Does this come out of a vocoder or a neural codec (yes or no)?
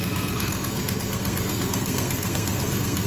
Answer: yes